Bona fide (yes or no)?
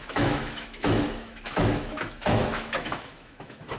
no